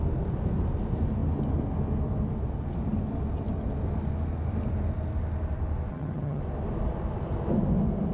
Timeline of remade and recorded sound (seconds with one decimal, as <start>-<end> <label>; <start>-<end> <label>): 0.0-5.9 recorded; 5.9-6.4 remade; 6.4-8.1 recorded